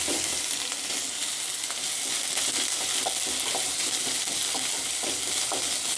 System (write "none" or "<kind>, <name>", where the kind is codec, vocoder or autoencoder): none